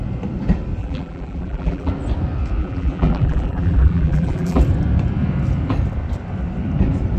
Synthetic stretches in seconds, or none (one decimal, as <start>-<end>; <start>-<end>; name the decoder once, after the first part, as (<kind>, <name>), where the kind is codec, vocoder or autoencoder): 0.8-1.9 (vocoder, BigVGAN v2); 2.6-4.6